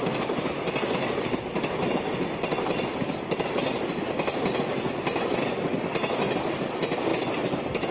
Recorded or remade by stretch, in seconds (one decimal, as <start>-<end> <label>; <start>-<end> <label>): 0.0-7.9 recorded